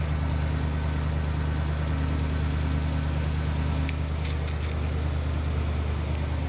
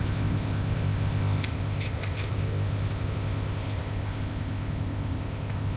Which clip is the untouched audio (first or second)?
first